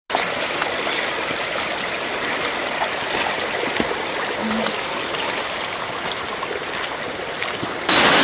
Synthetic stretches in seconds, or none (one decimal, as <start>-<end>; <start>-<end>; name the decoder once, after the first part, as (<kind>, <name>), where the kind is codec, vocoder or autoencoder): none